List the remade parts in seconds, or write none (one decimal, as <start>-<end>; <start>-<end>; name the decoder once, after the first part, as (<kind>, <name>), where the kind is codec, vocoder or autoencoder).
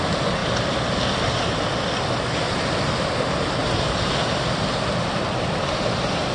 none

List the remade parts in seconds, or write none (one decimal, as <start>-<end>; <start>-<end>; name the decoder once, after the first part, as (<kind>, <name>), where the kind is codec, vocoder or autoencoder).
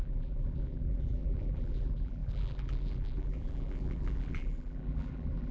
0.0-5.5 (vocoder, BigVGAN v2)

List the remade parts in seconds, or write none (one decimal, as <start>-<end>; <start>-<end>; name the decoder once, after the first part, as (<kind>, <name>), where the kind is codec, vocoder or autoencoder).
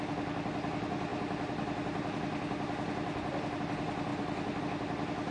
none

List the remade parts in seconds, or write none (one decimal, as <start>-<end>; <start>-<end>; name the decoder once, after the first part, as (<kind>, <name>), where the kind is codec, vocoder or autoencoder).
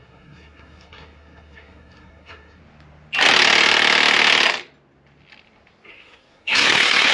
0.0-2.6 (codec, SNAC); 5.9-7.1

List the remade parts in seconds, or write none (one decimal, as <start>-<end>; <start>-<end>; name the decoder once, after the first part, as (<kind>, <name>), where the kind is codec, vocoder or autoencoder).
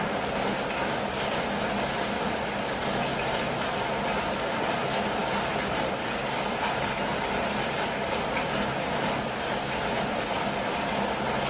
none